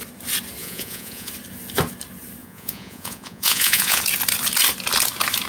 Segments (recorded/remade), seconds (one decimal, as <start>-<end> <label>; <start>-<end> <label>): 0.0-0.6 recorded; 0.6-1.3 remade; 1.3-2.4 recorded; 2.4-4.0 remade; 4.0-5.5 recorded